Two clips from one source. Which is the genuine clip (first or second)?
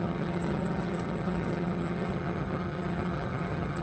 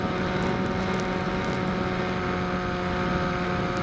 second